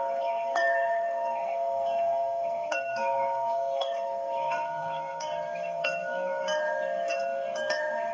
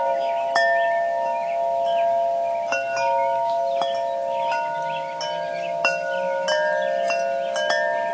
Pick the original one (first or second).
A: second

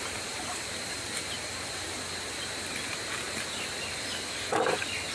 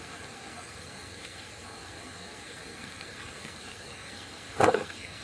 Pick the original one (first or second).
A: first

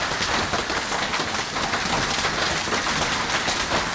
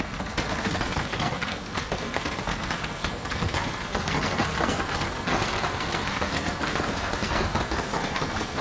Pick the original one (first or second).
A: first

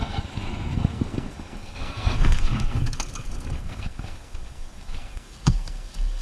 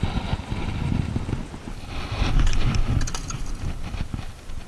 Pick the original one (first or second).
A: second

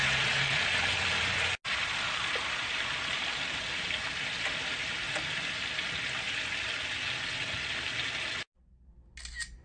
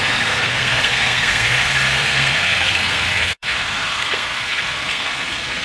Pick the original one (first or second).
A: first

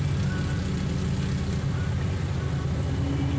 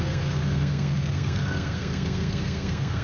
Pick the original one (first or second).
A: first